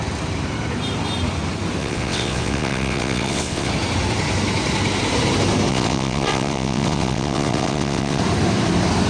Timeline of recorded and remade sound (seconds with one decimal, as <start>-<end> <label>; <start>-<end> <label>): 0.0-1.8 recorded; 1.8-3.7 remade; 3.7-5.7 recorded; 5.7-8.2 remade; 8.2-9.1 recorded